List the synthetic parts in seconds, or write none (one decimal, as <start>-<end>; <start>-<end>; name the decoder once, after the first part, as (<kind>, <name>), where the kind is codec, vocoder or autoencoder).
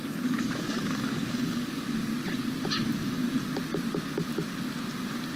0.0-2.1 (codec, DAC)